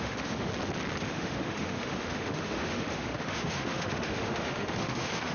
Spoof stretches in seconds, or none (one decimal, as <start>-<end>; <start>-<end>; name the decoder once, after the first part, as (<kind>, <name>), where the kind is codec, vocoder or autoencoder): 0.0-0.5 (autoencoder, DAC-VAE); 1.1-5.3